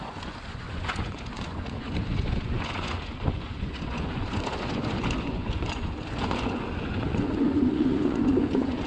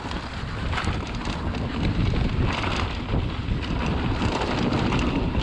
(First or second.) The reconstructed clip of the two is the first